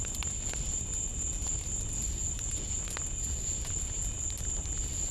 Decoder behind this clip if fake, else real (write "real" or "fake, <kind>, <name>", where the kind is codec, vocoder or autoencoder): real